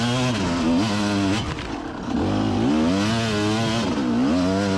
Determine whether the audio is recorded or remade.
recorded